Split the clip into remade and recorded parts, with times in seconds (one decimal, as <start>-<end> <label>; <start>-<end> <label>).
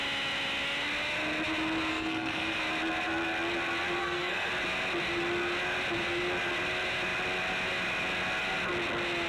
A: 0.0-1.9 recorded; 1.9-2.6 remade; 2.6-4.0 recorded; 4.0-4.5 remade; 4.5-9.3 recorded